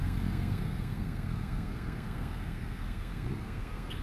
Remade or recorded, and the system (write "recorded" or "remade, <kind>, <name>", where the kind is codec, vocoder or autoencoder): remade, codec, SNAC